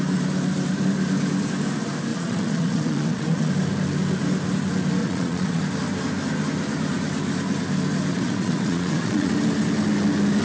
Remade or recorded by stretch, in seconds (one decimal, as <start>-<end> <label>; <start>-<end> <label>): 0.0-2.1 recorded; 2.1-3.5 remade; 3.5-5.0 recorded; 5.0-5.6 remade; 5.6-8.1 recorded; 8.1-9.3 remade; 9.3-10.4 recorded